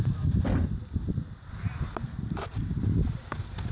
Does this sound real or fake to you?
real